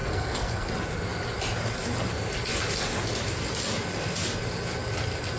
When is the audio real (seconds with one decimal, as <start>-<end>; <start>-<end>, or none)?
0.7-5.4